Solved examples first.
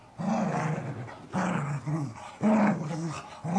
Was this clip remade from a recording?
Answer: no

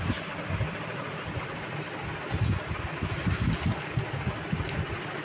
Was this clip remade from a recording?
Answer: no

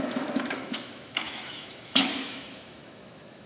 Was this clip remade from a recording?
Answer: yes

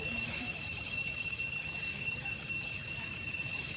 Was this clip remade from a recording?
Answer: yes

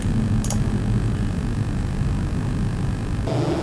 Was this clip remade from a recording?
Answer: no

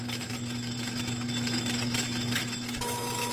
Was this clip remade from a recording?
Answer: yes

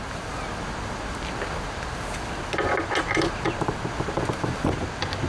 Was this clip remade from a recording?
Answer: no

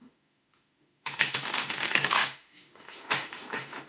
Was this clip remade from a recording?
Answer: yes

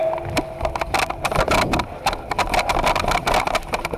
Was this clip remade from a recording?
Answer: no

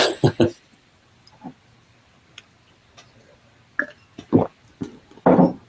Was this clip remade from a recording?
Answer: no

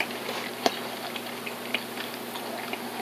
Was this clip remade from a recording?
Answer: no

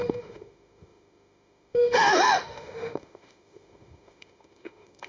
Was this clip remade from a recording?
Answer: yes